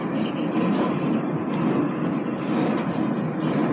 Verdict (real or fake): real